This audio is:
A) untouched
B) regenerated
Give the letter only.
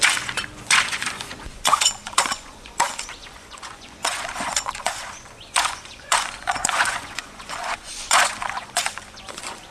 B